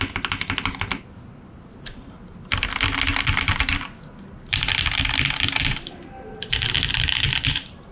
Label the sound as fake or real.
real